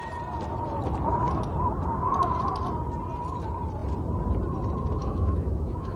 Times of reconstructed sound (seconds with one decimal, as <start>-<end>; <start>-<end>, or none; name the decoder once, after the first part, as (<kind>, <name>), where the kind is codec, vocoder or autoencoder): 5.0-6.0 (autoencoder, DAC-VAE)